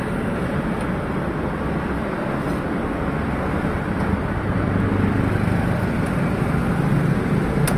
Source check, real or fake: real